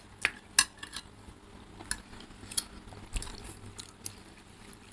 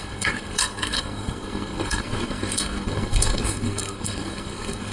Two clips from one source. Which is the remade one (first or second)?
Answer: second